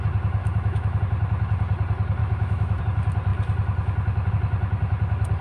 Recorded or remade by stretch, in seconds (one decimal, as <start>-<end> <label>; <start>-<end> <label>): 0.0-0.4 recorded; 0.4-1.0 remade; 1.0-2.2 recorded; 2.2-2.8 remade; 2.8-5.4 recorded